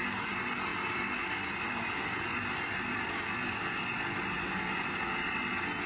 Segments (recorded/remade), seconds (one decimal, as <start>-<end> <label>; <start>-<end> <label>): 0.0-0.7 recorded; 0.7-4.2 remade; 4.2-5.9 recorded